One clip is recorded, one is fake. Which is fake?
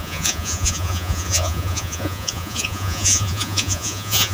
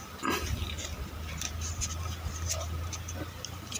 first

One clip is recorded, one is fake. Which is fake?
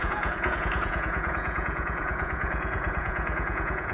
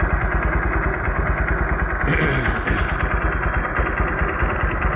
first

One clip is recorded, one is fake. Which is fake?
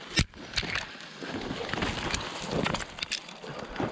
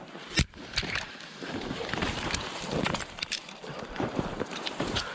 second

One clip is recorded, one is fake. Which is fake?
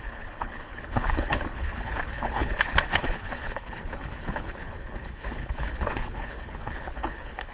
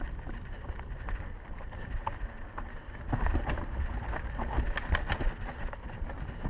first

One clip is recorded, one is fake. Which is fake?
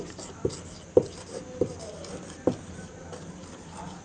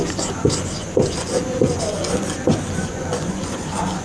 second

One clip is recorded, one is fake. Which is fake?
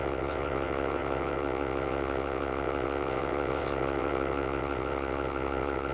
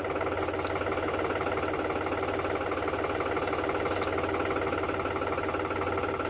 first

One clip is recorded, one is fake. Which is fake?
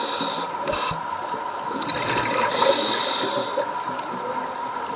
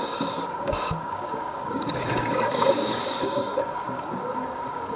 second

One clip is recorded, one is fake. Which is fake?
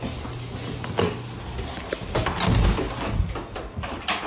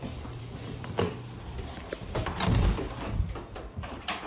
second